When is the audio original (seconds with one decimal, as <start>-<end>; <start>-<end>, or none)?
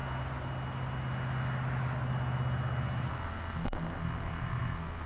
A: 0.0-3.1